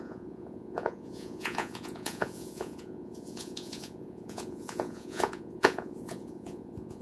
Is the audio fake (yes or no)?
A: yes